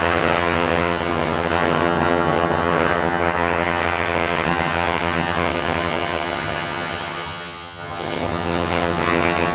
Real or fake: fake